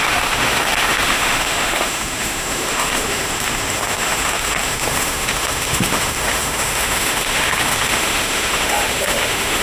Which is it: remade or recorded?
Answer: remade